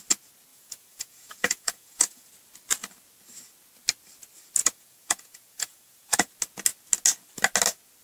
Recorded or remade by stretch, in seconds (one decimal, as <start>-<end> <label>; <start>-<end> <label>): 0.0-0.5 recorded; 0.5-2.3 remade; 2.3-4.6 recorded; 4.6-6.3 remade; 6.3-8.0 recorded

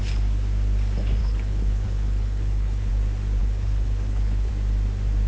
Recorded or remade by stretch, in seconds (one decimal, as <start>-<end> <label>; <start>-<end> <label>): 0.0-1.2 recorded; 1.2-2.9 remade; 2.9-3.4 recorded; 3.4-4.5 remade; 4.5-5.3 recorded

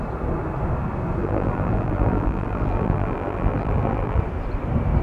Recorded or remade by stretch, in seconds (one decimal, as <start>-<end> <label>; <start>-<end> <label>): 0.0-1.2 recorded; 1.2-4.2 remade; 4.2-5.0 recorded